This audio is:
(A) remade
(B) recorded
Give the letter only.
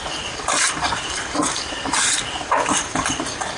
A